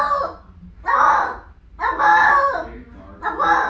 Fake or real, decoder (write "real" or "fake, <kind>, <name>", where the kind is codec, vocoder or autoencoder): real